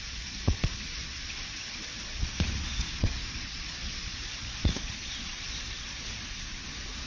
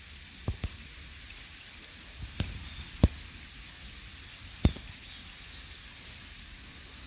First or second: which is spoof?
first